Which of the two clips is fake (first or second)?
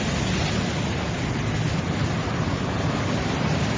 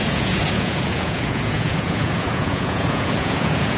second